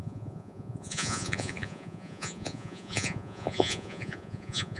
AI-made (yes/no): yes